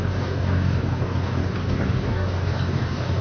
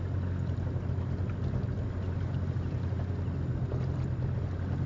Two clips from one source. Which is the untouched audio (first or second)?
second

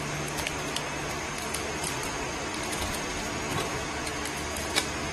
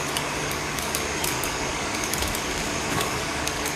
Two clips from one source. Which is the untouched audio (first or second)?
first